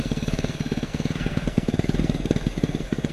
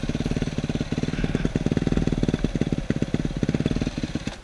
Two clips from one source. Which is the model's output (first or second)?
first